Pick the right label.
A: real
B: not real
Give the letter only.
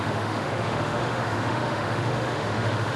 B